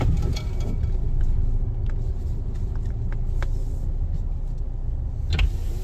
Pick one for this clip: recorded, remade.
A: recorded